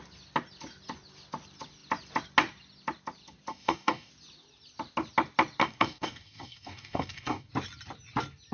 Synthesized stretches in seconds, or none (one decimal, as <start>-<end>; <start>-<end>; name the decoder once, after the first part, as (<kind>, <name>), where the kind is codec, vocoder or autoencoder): 3.5-4.1 (codec, DAC); 5.6-7.5